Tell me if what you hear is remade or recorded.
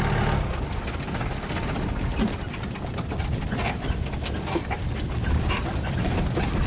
recorded